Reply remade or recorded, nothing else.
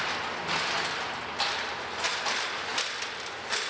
recorded